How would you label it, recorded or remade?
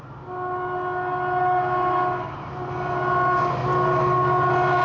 recorded